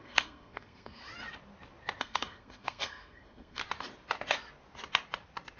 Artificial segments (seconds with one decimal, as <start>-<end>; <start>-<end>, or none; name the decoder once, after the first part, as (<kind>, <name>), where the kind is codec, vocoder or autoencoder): 0.0-1.0 (codec, SNAC); 2.0-3.6